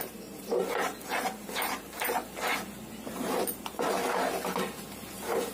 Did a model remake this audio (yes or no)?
yes